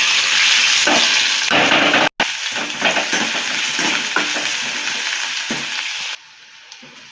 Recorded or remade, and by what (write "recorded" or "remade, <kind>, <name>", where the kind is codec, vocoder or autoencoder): recorded